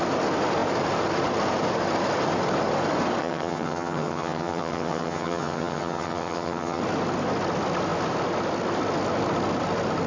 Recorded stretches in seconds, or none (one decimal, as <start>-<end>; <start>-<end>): 0.0-3.2; 6.8-10.1

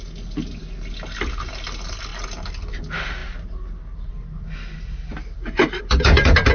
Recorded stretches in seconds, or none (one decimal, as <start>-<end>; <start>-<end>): 0.0-6.5

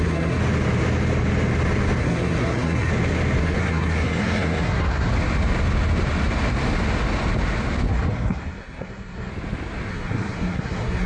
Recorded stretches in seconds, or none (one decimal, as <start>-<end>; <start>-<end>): 0.4-2.0; 2.9-3.4; 5.1-7.9; 9.3-9.9

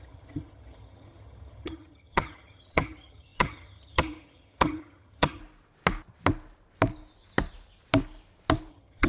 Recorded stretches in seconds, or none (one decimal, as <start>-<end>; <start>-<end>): 5.4-8.7